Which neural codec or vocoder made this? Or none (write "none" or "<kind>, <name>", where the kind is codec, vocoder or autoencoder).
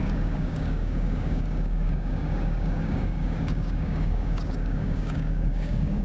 codec, DAC